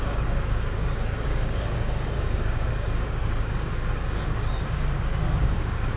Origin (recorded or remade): remade